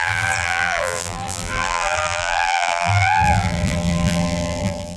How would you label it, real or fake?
fake